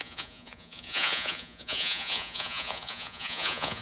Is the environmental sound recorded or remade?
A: remade